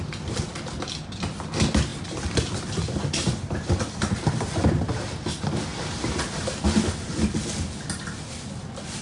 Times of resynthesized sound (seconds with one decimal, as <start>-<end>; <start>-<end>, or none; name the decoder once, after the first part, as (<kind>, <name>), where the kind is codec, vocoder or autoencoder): 1.9-4.7 (vocoder, BigVGAN v2); 5.7-6.4